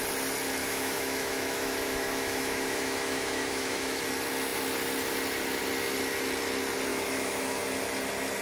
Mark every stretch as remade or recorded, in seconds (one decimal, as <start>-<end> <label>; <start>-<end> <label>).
0.0-0.6 recorded; 0.6-4.0 remade; 4.0-6.9 recorded; 6.9-7.6 remade; 7.6-8.4 recorded